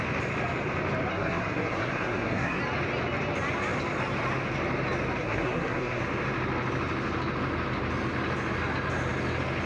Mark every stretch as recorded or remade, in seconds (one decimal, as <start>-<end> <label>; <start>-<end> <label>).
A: 0.0-1.1 recorded; 1.1-2.6 remade; 2.6-5.2 recorded; 5.2-6.0 remade; 6.0-9.7 recorded

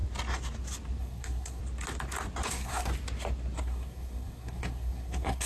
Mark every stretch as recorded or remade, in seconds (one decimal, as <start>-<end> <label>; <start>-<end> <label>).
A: 0.0-1.0 recorded; 1.0-1.6 remade; 1.6-2.5 recorded; 2.5-2.9 remade; 2.9-3.6 recorded; 3.6-5.5 remade

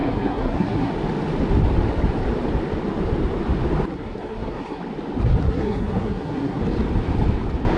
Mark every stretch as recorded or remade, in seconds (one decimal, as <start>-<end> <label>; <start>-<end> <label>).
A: 0.0-0.9 remade; 0.9-3.9 recorded; 3.9-4.8 remade; 4.8-5.4 recorded; 5.4-6.6 remade; 6.6-7.8 recorded

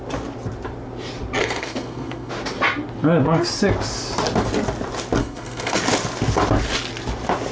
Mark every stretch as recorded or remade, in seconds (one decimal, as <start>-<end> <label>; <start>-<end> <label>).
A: 0.0-1.4 recorded; 1.4-2.3 remade; 2.3-5.2 recorded; 5.2-5.8 remade; 5.8-7.5 recorded

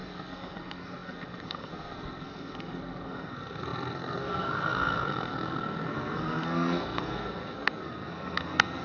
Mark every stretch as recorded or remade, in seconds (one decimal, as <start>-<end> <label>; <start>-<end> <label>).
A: 0.0-8.8 remade